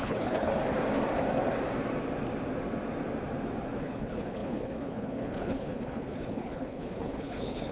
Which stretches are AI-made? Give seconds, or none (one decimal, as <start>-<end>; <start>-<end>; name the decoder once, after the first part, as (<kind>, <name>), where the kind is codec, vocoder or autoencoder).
0.0-0.5 (codec, HILCodec); 3.8-7.7